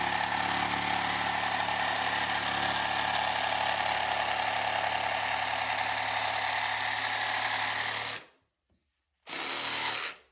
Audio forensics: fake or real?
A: real